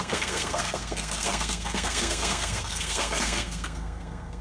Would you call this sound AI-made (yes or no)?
yes